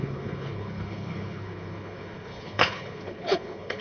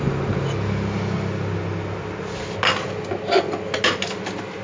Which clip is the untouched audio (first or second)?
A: second